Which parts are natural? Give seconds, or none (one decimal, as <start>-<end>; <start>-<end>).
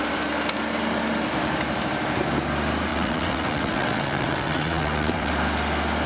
0.0-2.9; 5.3-6.1